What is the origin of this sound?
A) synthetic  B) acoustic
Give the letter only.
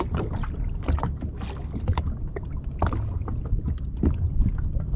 B